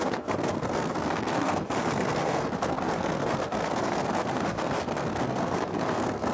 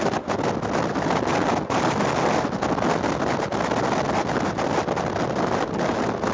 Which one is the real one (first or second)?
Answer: second